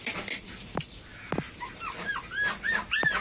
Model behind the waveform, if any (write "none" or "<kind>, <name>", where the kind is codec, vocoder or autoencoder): none